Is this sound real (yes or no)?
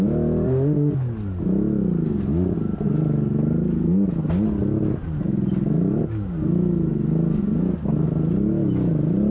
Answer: yes